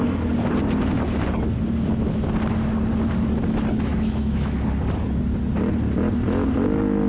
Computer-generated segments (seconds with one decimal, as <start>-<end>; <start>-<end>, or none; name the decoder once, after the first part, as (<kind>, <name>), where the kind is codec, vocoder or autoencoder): 3.9-4.6 (autoencoder, DAC-VAE)